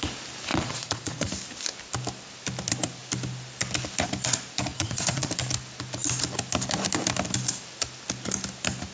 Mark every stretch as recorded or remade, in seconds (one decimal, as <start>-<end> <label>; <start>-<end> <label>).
0.0-0.5 recorded; 0.5-1.3 remade; 1.3-4.7 recorded; 4.7-5.3 remade; 5.3-8.9 recorded